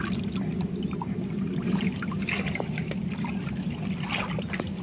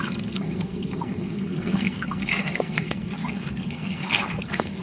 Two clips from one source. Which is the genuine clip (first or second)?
first